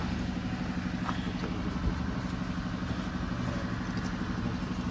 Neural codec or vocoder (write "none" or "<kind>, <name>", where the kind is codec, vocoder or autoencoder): none